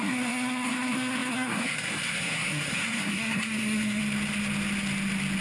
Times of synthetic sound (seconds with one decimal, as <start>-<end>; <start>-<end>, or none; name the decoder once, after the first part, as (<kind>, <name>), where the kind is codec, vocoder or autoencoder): 0.0-4.0 (codec, SNAC)